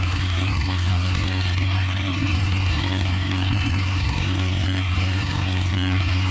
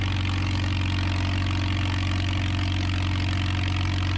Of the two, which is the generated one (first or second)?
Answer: first